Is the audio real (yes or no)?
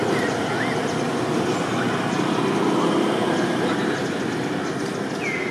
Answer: yes